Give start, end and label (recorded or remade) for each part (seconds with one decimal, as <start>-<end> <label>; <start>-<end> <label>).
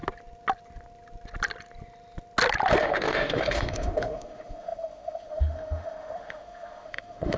0.0-2.8 recorded; 2.8-7.4 remade